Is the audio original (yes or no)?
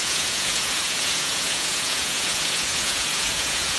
no